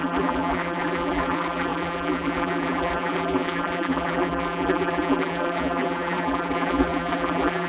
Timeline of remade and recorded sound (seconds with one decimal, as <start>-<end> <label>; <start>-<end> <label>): 0.0-7.7 remade